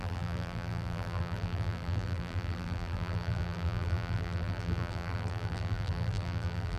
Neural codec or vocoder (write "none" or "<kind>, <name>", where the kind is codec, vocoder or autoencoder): vocoder, BigVGAN v2